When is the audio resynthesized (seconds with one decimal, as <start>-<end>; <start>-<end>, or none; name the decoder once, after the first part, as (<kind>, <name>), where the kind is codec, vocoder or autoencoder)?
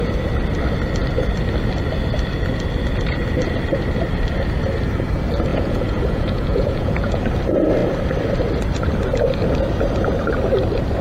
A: 5.5-7.2 (vocoder, Vocos)